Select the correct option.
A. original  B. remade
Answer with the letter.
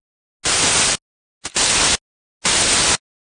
A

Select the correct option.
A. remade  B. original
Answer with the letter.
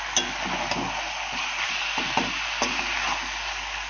B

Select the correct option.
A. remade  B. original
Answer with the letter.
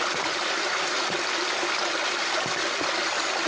B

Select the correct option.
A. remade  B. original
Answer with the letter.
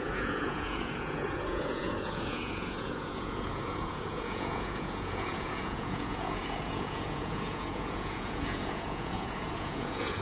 A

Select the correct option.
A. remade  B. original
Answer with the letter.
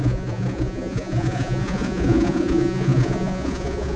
A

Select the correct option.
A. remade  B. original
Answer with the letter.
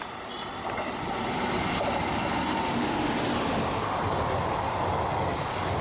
B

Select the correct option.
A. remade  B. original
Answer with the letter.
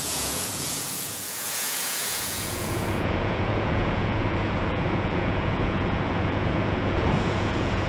A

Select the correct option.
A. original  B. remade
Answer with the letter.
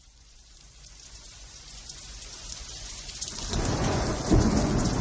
B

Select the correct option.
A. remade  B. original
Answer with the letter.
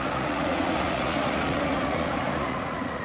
A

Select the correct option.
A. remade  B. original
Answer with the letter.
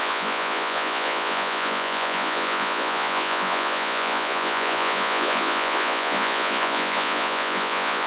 A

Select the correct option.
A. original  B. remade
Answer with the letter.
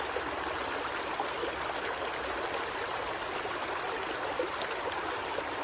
A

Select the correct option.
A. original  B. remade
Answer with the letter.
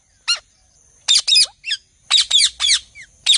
A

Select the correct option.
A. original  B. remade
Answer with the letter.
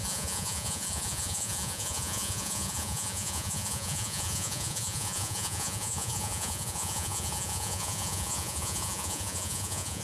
B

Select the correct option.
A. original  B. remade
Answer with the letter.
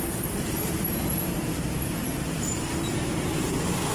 A